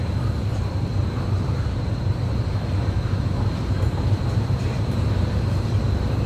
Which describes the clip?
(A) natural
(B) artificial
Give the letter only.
B